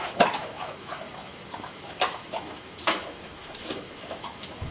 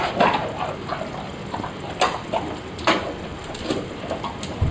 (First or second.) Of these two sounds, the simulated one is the first